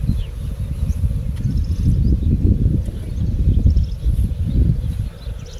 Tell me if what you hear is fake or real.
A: real